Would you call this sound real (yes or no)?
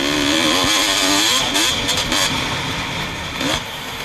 yes